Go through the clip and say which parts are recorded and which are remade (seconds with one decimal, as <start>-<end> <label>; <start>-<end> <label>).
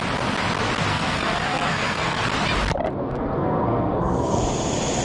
0.0-0.9 recorded; 0.9-2.2 remade; 2.2-3.0 recorded; 3.0-4.4 remade; 4.4-5.0 recorded